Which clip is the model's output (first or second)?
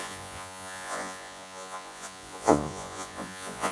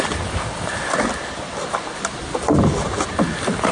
first